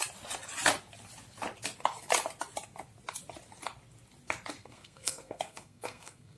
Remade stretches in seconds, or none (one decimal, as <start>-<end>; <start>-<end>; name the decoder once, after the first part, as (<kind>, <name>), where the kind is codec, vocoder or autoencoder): 4.6-6.4 (codec, SNAC)